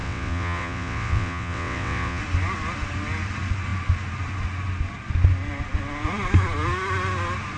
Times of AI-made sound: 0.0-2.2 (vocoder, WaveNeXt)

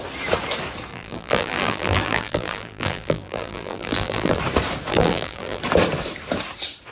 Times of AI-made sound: 0.9-4.4 (vocoder, BigVGAN v2); 4.9-5.6

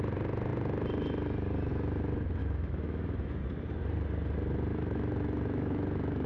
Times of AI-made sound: 2.4-3.4 (autoencoder, DAC-VAE); 4.7-6.3

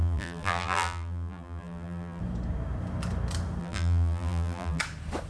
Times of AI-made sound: 0.0-2.2 (vocoder, BigVGAN v2); 3.6-4.8

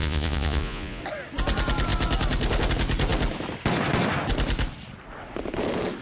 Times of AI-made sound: 0.0-1.0 (vocoder, Vocos)

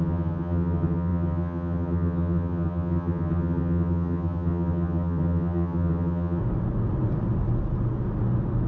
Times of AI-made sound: 0.0-6.4 (vocoder, HiFi-GAN)